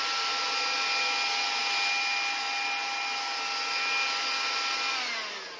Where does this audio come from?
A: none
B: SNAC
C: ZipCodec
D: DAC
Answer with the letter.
A